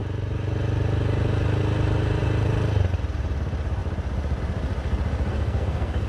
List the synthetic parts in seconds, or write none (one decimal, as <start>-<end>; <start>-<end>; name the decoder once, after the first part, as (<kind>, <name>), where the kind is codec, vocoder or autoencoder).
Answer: 5.3-6.1 (codec, SNAC)